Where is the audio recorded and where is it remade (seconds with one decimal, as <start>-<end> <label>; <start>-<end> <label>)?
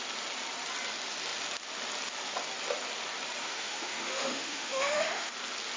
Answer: 0.0-3.4 recorded; 3.4-5.3 remade; 5.3-5.8 recorded